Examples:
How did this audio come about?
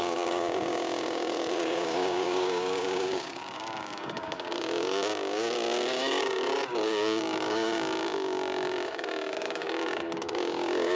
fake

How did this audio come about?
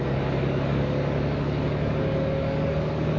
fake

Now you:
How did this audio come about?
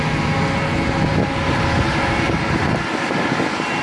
real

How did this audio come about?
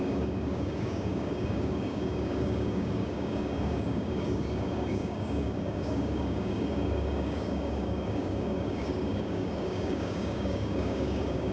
fake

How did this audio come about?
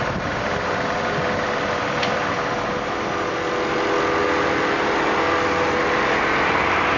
real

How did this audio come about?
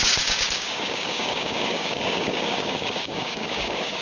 fake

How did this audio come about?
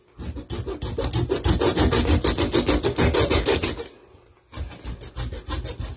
real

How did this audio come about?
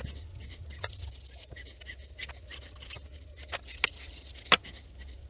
real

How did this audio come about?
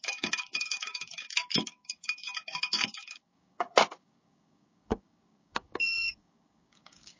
fake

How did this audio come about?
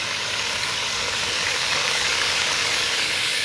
fake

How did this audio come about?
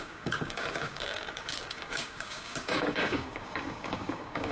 fake